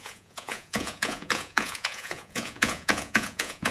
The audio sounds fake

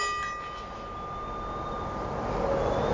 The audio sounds real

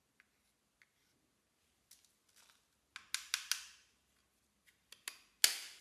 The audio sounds real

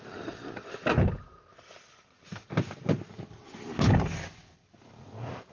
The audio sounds real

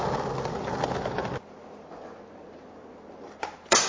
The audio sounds real